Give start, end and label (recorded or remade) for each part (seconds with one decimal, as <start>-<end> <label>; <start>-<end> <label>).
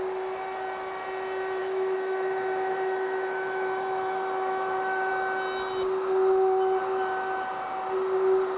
0.0-1.6 recorded; 1.6-5.1 remade; 5.1-8.6 recorded